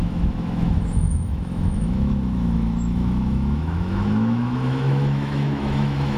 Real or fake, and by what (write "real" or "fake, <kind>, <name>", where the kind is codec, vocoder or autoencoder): fake, autoencoder, DAC-VAE